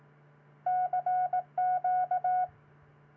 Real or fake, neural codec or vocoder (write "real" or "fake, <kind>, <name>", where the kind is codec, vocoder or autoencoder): real